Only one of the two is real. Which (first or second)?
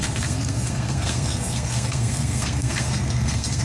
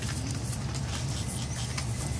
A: second